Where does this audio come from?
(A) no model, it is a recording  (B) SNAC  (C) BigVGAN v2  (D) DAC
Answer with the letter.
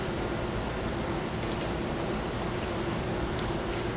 A